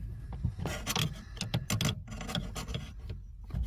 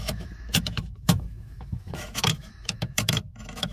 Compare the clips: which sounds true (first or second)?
first